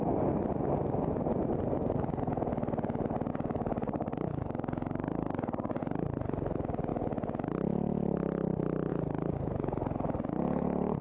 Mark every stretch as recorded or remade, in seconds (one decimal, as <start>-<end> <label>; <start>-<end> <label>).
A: 0.0-3.3 recorded; 3.3-5.8 remade; 5.8-11.0 recorded